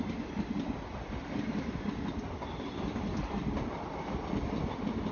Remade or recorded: recorded